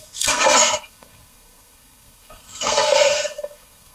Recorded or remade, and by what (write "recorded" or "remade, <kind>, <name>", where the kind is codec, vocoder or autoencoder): remade, codec, SNAC